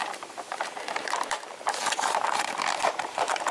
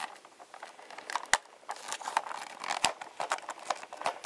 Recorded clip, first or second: second